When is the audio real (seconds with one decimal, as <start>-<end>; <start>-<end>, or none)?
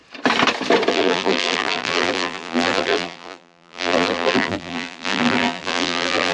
0.0-0.9